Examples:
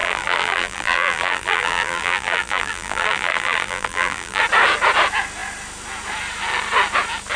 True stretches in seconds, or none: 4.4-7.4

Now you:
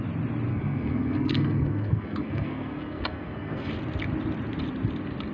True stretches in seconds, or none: 0.0-0.5; 3.7-5.3

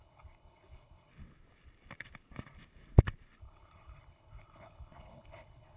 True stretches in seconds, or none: 1.1-3.4

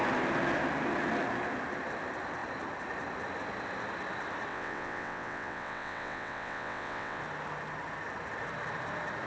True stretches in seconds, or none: 0.0-4.5; 7.2-9.3

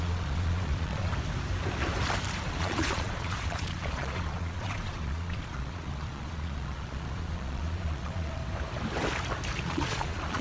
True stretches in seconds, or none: 1.1-2.5; 8.4-9.6

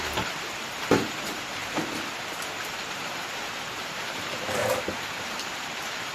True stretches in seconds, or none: 1.6-2.6; 4.6-5.2

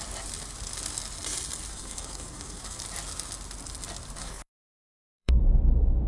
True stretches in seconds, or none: 0.0-1.7; 2.8-4.2; 5.4-6.1

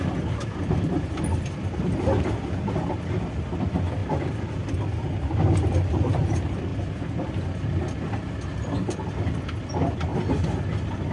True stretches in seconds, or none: 0.0-11.1